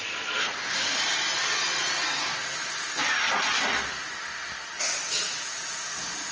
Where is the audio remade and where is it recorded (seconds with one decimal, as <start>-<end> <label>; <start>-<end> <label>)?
0.0-0.4 recorded; 0.4-1.0 remade; 1.0-6.3 recorded